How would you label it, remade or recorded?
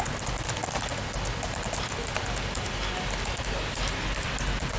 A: recorded